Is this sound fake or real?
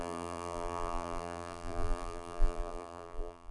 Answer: fake